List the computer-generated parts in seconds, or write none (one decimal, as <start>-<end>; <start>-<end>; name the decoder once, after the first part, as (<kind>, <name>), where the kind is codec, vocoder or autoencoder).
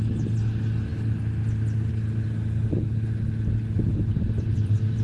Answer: none